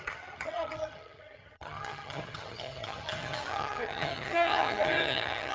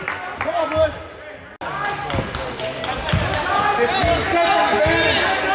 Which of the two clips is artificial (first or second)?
first